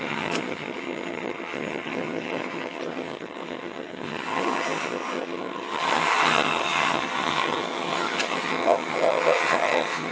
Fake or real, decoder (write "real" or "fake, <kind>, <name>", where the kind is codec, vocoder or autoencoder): fake, vocoder, HiFi-GAN